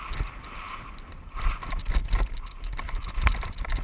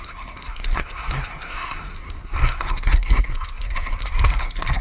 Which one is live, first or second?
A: first